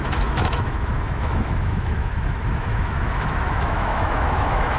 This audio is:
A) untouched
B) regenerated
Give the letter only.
B